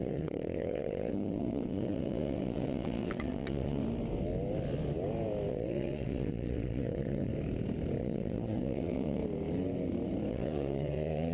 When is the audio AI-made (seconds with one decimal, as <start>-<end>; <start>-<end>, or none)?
0.0-3.8; 5.5-7.3; 8.0-9.2; 10.3-11.3

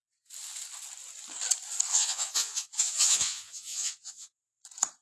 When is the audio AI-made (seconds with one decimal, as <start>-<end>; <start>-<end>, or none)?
1.9-4.3